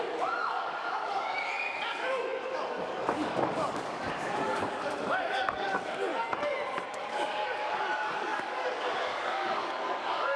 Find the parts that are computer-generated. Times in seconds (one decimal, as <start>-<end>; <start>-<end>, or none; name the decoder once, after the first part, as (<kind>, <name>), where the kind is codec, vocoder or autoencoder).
0.0-6.1 (codec, DAC); 6.9-10.4